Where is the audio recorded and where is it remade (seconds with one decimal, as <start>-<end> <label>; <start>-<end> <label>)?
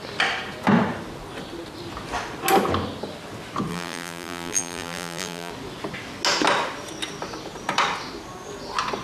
0.0-3.7 recorded; 3.7-5.5 remade; 5.5-9.0 recorded